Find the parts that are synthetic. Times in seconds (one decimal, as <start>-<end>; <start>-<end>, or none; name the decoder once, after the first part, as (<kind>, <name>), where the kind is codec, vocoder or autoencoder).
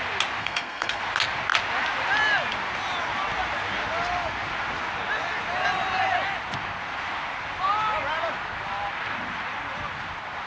0.4-1.0 (codec, SNAC)